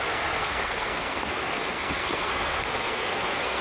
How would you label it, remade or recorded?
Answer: remade